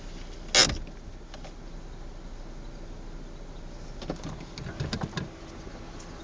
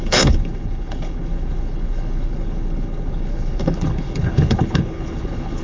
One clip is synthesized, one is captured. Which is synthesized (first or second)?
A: second